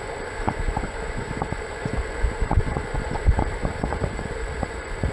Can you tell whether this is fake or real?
fake